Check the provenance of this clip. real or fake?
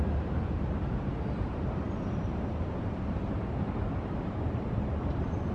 fake